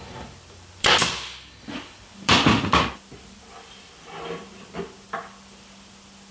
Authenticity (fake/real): fake